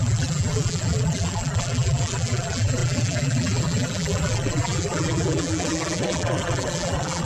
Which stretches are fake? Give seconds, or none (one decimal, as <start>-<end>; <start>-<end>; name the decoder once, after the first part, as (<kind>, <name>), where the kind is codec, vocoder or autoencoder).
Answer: 0.0-7.3 (vocoder, BigVGAN v2)